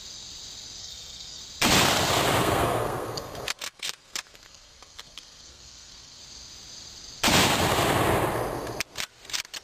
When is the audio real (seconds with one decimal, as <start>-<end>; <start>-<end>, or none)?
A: 0.0-0.8; 1.4-2.4; 6.2-9.6